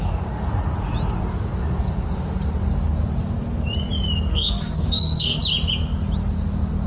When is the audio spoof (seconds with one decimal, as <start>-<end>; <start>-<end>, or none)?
4.3-5.4